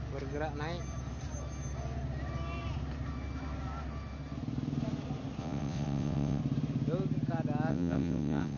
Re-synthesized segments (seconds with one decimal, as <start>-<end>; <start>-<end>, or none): 5.4-6.4; 7.7-8.6

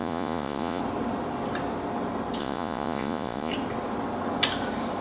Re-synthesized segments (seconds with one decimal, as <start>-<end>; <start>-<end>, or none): 0.0-0.8; 2.4-3.5

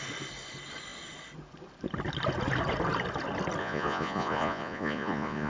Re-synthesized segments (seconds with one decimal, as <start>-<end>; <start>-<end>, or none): 3.6-5.5

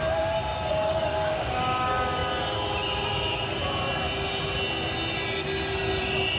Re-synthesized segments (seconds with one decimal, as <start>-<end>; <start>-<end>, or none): 0.5-1.6

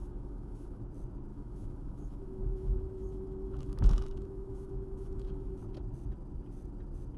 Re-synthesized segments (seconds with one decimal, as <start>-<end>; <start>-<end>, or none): 0.0-0.8; 1.3-5.6

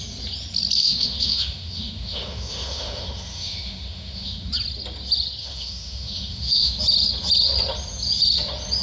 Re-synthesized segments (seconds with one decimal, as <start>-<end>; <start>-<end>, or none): 0.8-4.5; 5.4-6.8

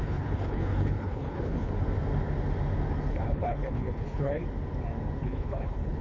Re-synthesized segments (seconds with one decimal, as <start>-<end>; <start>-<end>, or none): 0.0-1.7; 3.1-4.4; 5.2-6.0

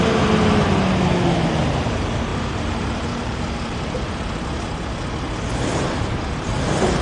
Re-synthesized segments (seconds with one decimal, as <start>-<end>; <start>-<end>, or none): 2.3-4.1